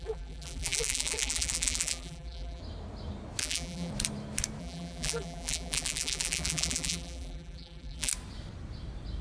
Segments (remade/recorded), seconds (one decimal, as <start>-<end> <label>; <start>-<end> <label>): 0.0-2.6 remade; 2.6-3.4 recorded; 3.4-3.9 remade; 3.9-4.6 recorded; 4.6-8.1 remade; 8.1-9.2 recorded